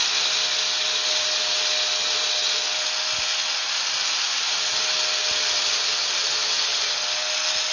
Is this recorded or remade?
recorded